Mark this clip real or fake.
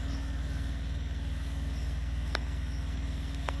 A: fake